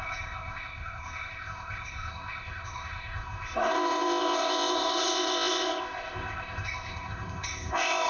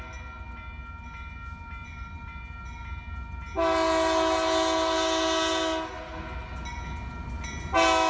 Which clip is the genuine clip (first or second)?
second